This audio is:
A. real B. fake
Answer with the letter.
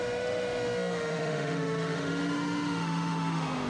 B